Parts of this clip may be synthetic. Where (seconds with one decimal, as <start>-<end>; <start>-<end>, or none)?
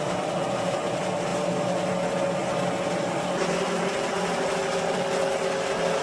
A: none